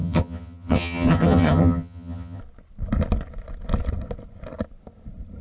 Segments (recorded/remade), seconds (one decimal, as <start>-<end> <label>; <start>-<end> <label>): 0.0-2.4 remade; 2.4-5.4 recorded